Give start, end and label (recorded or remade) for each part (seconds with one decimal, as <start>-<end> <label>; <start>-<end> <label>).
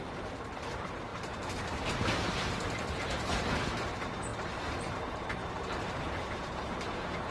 0.0-7.3 remade